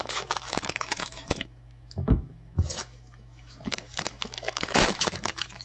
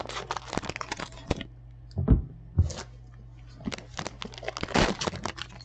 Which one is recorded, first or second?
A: second